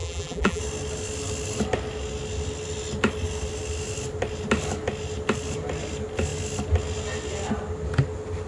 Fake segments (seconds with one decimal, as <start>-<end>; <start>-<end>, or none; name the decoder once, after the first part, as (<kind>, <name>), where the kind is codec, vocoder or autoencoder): 0.0-0.6 (vocoder, BigVGAN v2)